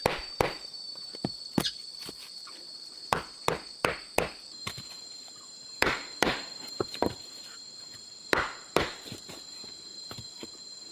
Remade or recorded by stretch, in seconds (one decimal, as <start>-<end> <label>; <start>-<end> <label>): 0.0-10.9 remade